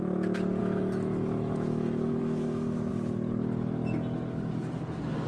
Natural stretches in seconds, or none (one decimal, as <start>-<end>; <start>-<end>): 0.0-0.6; 2.9-5.3